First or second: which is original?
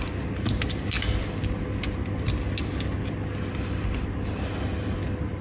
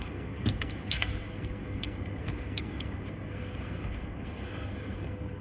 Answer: first